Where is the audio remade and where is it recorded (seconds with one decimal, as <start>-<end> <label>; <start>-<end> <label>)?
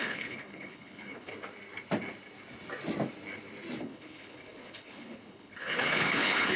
0.0-1.3 remade; 1.3-3.8 recorded; 3.8-6.6 remade